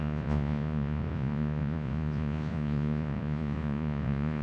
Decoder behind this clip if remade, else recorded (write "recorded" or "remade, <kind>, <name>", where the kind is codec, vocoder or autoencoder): remade, vocoder, Vocos